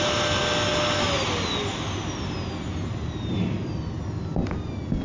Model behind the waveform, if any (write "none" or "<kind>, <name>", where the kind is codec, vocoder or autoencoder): none